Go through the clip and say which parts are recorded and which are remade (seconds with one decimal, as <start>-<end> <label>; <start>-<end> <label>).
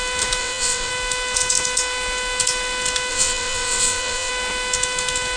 0.0-0.4 recorded; 0.4-0.9 remade; 0.9-3.1 recorded; 3.1-4.3 remade; 4.3-5.4 recorded